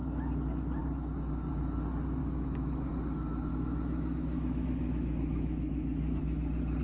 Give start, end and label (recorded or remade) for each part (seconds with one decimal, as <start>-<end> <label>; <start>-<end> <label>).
0.0-2.2 recorded; 2.2-2.9 remade; 2.9-3.5 recorded; 3.5-6.2 remade; 6.2-6.8 recorded